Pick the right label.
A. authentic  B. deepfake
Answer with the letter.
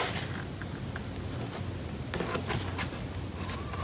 A